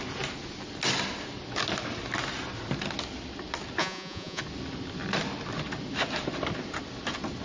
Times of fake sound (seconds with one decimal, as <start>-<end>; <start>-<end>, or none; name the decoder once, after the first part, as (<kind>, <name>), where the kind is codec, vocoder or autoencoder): 3.8-4.4 (vocoder, Vocos)